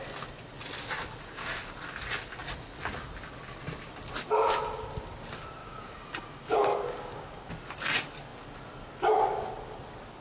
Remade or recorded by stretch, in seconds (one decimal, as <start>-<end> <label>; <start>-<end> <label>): 0.0-5.6 recorded; 5.6-7.5 remade; 7.5-10.2 recorded